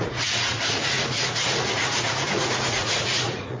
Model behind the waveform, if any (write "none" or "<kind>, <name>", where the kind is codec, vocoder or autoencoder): vocoder, Vocos